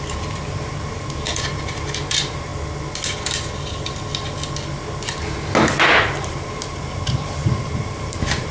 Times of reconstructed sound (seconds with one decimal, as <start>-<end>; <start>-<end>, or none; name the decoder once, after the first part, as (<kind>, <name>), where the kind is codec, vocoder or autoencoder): 0.0-2.5 (vocoder, BigVGAN v2); 6.2-8.5